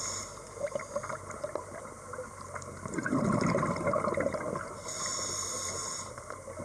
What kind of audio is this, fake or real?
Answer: real